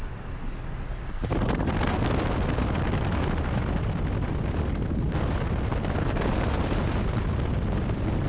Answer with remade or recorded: recorded